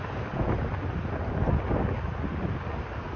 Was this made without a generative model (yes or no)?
yes